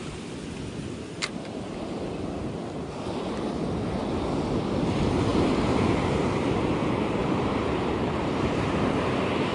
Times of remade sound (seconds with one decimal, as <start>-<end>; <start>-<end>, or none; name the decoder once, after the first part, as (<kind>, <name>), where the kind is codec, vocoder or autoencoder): 5.3-6.7 (vocoder, BigVGAN v2); 7.2-9.0